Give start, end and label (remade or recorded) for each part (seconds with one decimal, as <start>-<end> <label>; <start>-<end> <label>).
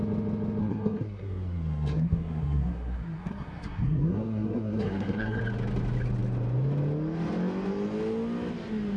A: 0.0-0.6 recorded; 0.6-5.4 remade; 5.4-9.0 recorded